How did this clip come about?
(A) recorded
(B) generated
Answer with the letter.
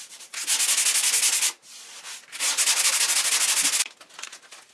A